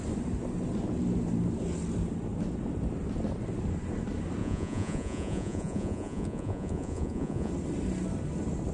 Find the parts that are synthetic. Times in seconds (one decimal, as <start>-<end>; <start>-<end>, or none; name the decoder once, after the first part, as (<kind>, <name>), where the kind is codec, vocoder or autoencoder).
4.4-7.5 (vocoder, Vocos)